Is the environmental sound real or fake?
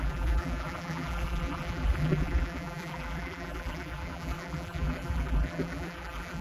fake